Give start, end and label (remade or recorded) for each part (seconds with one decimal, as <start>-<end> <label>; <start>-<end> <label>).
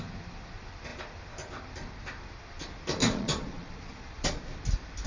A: 0.0-3.0 recorded; 3.0-4.4 remade; 4.4-5.1 recorded